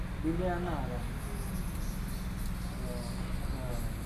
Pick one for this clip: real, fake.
real